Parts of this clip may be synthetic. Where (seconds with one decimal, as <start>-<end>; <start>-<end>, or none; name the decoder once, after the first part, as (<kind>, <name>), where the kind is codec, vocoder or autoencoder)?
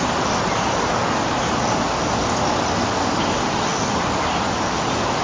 none